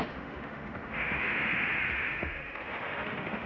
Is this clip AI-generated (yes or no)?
yes